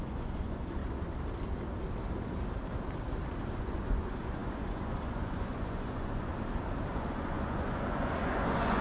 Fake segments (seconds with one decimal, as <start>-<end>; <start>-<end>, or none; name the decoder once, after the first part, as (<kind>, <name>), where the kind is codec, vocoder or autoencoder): 0.0-0.8 (vocoder, Vocos); 3.6-6.3; 6.9-8.8